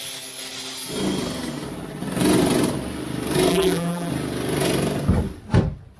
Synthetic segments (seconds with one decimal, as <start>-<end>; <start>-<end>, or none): 3.5-4.1